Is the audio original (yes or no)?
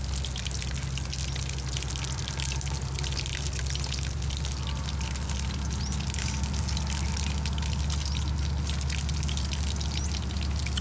yes